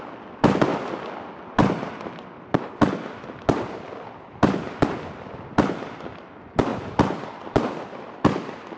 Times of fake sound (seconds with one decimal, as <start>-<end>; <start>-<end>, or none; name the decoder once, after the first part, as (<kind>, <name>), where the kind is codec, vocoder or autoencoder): none